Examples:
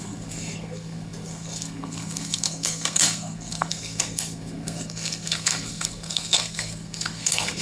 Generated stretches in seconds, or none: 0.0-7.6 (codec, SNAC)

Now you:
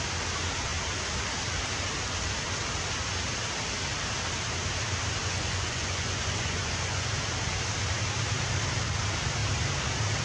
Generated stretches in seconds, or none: 5.2-7.1 (vocoder, Vocos)

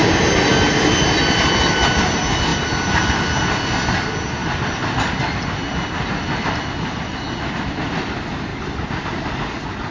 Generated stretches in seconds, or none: none

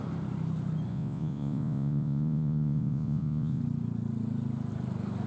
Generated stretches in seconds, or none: 0.9-3.6 (vocoder, Vocos)